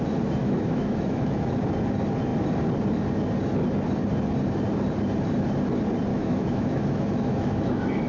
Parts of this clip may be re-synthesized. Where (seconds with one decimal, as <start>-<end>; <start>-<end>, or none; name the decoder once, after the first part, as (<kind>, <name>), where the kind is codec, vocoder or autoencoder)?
0.4-1.6 (autoencoder, DAC-VAE); 6.1-8.1